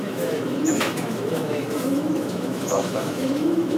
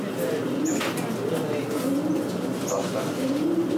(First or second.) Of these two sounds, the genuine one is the second